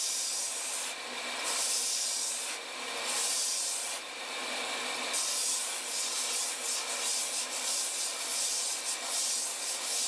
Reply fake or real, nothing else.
real